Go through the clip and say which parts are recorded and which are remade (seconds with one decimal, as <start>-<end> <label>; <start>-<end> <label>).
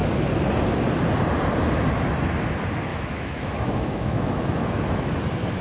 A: 0.0-2.9 recorded; 2.9-5.1 remade; 5.1-5.6 recorded